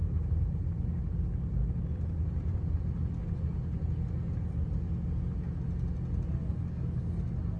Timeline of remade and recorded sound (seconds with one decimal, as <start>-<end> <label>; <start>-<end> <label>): 0.0-6.4 recorded; 6.4-7.1 remade; 7.1-7.6 recorded